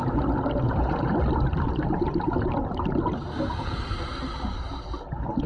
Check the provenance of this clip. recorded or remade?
recorded